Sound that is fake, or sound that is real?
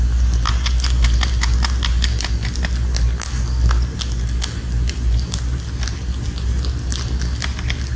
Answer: real